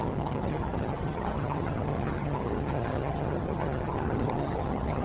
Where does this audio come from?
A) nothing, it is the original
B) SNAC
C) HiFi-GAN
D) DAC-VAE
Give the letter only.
C